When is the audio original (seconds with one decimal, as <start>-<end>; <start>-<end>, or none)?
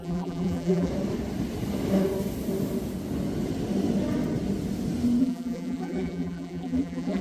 0.9-5.2